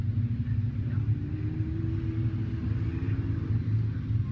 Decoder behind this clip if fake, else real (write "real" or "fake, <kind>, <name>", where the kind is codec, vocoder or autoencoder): real